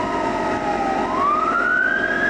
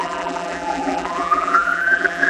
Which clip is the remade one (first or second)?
second